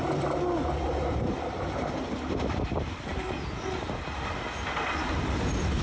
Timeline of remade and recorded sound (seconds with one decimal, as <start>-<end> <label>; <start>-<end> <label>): 0.0-5.8 recorded